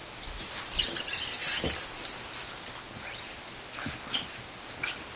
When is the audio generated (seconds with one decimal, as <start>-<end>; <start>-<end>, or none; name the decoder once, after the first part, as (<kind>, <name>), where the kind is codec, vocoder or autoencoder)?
0.0-0.5 (autoencoder, DAC-VAE)

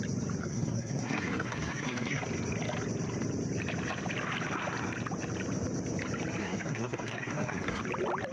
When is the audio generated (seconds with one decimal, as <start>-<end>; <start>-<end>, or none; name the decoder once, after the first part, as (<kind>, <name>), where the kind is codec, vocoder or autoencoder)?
0.4-2.2 (codec, SNAC); 6.4-7.8

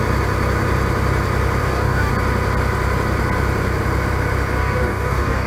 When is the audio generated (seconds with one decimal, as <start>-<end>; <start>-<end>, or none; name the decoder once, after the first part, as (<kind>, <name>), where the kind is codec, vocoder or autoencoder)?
1.6-2.1 (codec, DAC); 4.6-5.5

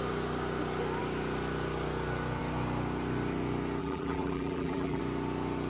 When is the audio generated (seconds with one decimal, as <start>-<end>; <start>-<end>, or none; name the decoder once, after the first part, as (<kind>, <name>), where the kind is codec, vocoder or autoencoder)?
3.8-5.0 (vocoder, BigVGAN v2)

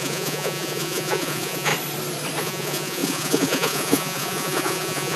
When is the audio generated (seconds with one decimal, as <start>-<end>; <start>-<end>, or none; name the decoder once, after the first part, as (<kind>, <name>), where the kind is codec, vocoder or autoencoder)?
0.0-1.7 (vocoder, Vocos); 2.4-5.2

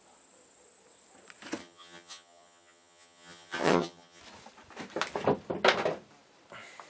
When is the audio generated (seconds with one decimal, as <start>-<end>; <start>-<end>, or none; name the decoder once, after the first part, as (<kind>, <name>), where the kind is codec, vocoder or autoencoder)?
1.6-4.2 (vocoder, HiFi-GAN)

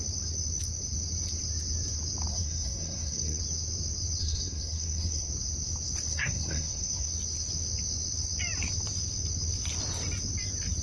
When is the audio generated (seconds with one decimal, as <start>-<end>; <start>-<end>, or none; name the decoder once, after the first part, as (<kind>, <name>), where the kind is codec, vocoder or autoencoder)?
2.3-3.4 (codec, SNAC); 4.2-5.3; 6.1-7.1